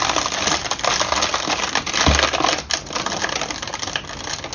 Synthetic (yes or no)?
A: no